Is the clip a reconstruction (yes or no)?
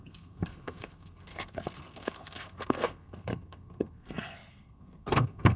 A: yes